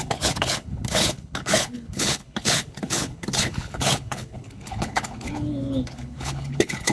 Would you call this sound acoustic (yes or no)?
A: no